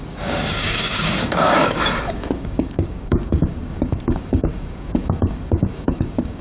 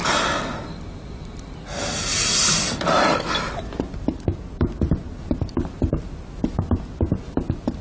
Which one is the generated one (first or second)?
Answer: first